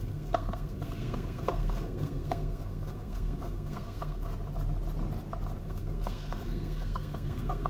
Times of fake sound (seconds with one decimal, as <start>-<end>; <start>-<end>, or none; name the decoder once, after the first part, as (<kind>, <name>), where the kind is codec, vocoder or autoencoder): 0.0-4.3 (codec, SNAC); 5.6-7.7